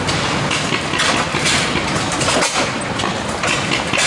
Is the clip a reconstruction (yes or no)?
no